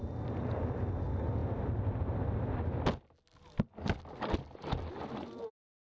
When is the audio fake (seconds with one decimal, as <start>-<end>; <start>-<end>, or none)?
none